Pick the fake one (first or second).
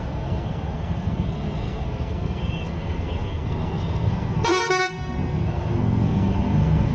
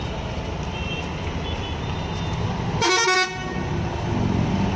first